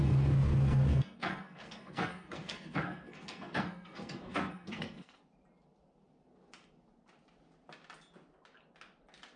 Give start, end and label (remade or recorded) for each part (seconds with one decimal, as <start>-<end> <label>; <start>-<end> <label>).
0.0-5.2 remade; 5.2-9.4 recorded